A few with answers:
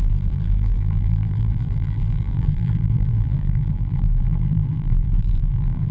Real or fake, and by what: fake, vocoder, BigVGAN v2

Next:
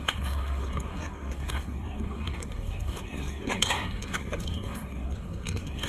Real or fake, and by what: fake, codec, SNAC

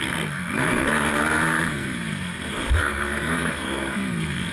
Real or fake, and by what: fake, codec, SNAC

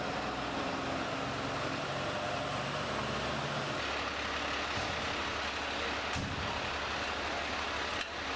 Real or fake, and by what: real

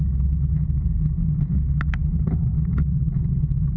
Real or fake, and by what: real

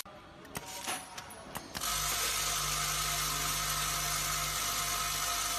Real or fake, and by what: real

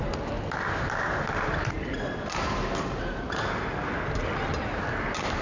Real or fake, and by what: real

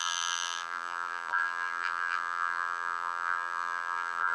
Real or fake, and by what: fake, vocoder, BigVGAN v2